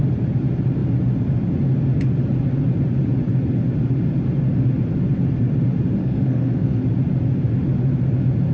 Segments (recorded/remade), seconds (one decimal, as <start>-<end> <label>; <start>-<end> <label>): 0.0-6.0 recorded; 6.0-6.8 remade; 6.8-8.5 recorded